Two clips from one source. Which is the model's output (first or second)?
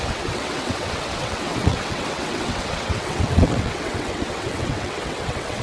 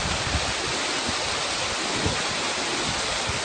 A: first